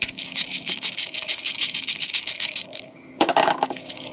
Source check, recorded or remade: remade